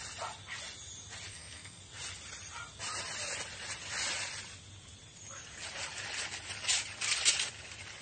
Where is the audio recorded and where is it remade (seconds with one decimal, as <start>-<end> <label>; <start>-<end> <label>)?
0.0-1.3 recorded; 1.3-1.8 remade; 1.8-8.0 recorded